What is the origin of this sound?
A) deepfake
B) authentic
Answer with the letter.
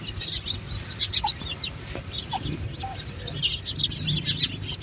B